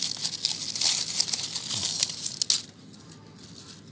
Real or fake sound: real